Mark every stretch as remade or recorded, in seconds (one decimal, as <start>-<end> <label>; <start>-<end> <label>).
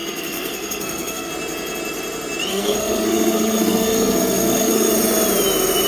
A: 0.0-1.3 remade; 1.3-2.5 recorded; 2.5-4.9 remade; 4.9-5.9 recorded